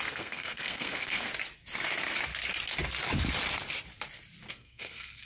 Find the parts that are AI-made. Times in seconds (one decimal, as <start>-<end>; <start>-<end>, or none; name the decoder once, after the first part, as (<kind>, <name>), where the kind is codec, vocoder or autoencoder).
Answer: 0.0-1.3 (codec, SNAC); 4.5-5.3